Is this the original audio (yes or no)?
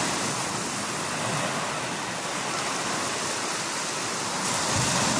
yes